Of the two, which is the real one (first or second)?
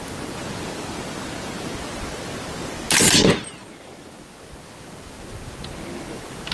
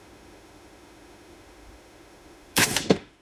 first